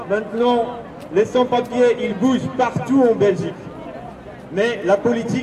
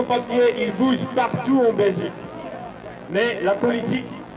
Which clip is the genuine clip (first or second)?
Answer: first